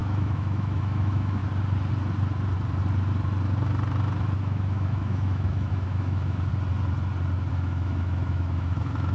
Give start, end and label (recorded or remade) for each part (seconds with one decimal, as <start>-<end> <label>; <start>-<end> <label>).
0.0-1.4 remade; 1.4-4.4 recorded; 4.4-6.5 remade; 6.5-7.5 recorded; 7.5-9.1 remade